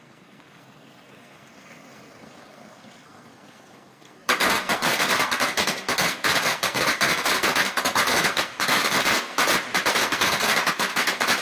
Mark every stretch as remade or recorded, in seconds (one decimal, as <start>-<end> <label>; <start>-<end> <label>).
0.0-9.4 remade; 9.4-9.9 recorded; 9.9-11.4 remade